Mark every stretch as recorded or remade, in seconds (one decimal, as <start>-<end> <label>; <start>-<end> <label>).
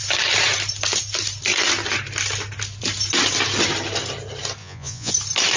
0.0-4.6 recorded; 4.6-5.1 remade; 5.1-5.6 recorded